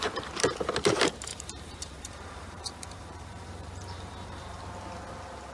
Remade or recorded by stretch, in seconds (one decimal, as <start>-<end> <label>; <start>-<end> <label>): 0.0-1.3 recorded; 1.3-4.6 remade; 4.6-5.5 recorded